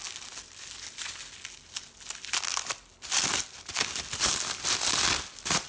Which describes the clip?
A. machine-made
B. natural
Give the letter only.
B